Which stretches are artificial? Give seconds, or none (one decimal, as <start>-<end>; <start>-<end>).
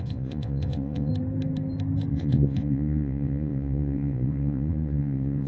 0.0-1.1; 2.1-5.5